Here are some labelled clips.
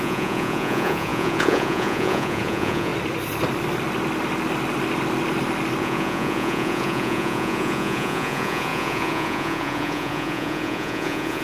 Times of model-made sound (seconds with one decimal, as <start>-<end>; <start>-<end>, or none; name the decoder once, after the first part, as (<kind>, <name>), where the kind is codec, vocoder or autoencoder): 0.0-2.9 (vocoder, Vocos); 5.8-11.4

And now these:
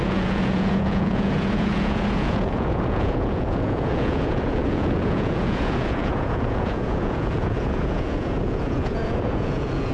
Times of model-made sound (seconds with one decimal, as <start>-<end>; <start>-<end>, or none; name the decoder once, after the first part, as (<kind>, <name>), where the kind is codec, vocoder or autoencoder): 0.0-9.9 (vocoder, Vocos)

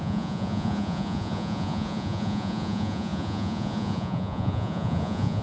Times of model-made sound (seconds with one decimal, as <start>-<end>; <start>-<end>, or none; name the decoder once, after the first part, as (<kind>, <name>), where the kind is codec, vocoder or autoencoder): 0.0-5.4 (vocoder, Vocos)

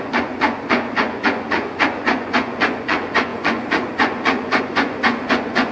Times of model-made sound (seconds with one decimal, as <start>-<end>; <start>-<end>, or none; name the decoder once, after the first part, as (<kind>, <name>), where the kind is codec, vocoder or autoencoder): 0.0-5.7 (vocoder, Vocos)

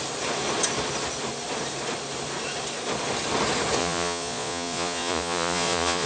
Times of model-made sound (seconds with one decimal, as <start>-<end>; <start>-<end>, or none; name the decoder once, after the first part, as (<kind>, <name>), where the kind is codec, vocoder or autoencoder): 3.8-6.1 (vocoder, Vocos)